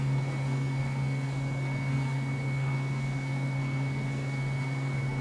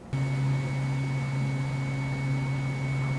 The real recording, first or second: second